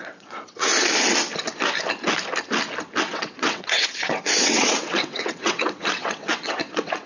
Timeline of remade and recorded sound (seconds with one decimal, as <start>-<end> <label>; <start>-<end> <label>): 0.0-0.7 remade; 0.7-3.0 recorded; 3.0-7.1 remade